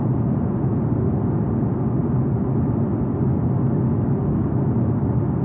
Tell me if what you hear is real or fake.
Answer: real